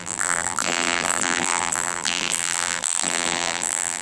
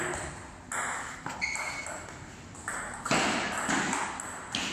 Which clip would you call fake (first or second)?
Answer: first